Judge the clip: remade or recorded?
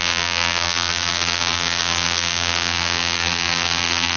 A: remade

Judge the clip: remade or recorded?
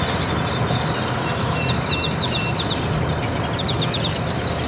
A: recorded